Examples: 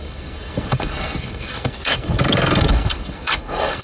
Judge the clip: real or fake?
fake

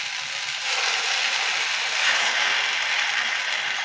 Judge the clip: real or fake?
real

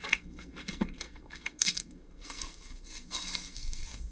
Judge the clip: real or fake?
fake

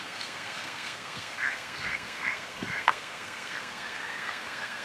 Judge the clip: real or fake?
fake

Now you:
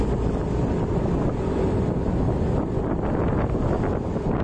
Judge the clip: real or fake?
real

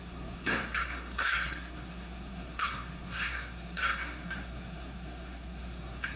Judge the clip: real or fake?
fake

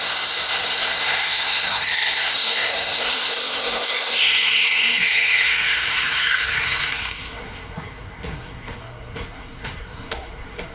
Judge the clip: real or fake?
fake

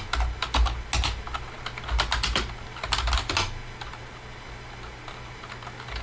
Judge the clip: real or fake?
real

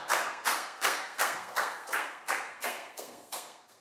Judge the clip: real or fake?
fake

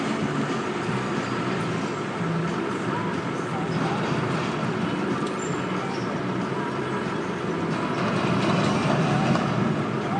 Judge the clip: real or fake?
real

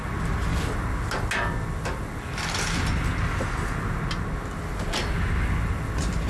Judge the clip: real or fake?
real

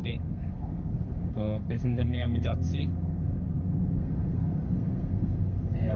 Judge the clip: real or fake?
fake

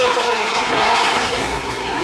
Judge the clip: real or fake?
fake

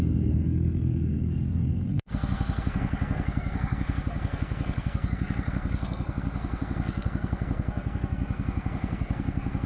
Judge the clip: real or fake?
fake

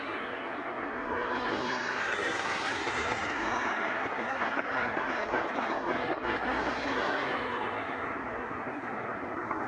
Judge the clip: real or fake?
fake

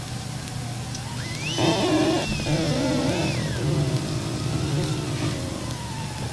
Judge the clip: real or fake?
real